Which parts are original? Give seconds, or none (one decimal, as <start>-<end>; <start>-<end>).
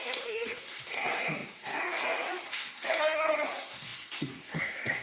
none